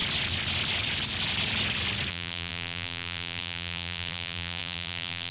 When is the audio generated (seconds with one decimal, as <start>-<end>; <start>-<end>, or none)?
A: 2.1-5.3